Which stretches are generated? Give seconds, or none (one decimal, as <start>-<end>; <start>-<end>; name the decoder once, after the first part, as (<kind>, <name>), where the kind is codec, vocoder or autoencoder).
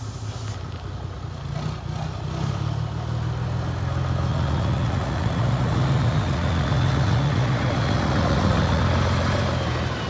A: 4.3-8.8 (vocoder, Vocos)